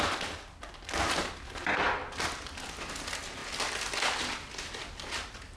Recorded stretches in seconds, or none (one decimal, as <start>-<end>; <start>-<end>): 0.0-5.6